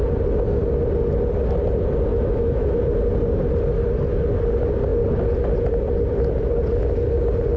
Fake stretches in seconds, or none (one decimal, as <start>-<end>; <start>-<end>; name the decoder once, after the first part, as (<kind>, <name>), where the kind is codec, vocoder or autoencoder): 2.1-2.8 (autoencoder, DAC-VAE)